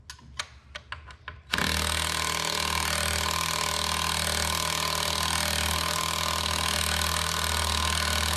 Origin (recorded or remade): recorded